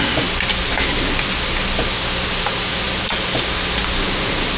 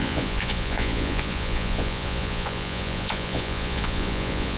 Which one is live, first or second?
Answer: first